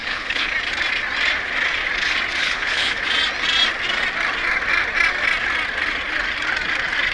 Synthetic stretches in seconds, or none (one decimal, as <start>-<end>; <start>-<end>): 0.0-0.5; 2.4-3.0